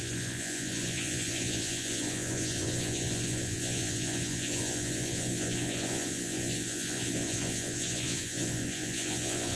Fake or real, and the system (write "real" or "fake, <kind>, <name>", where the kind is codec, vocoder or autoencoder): fake, vocoder, Vocos